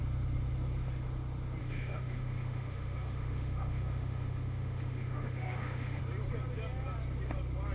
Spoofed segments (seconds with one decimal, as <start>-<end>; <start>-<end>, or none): 1.6-6.0